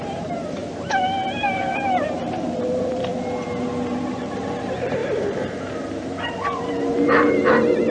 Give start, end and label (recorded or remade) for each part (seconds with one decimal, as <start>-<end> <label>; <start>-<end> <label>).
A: 0.0-0.6 remade; 0.6-1.3 recorded; 1.3-3.1 remade; 3.1-4.0 recorded; 4.0-7.9 remade